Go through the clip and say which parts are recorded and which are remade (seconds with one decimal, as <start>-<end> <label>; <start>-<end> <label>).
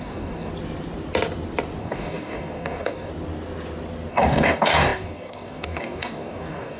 0.0-0.5 remade; 0.5-1.8 recorded; 1.8-3.1 remade; 3.1-4.1 recorded; 4.1-6.8 remade